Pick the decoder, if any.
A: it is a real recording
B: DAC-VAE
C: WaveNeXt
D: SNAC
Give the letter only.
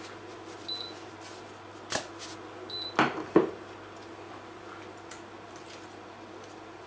A